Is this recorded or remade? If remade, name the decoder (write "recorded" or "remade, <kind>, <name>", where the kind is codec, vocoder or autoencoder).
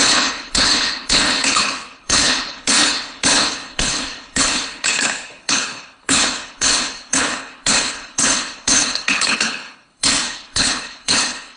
remade, codec, HILCodec